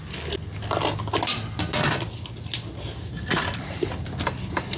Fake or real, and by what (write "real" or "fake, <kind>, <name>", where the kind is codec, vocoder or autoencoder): real